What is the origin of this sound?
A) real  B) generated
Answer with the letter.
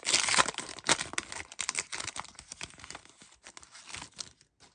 A